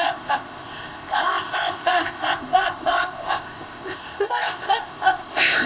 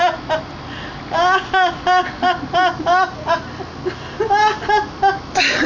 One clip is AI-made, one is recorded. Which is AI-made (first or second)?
first